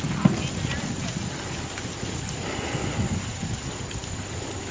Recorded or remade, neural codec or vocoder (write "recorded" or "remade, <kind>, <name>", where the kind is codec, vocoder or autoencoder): recorded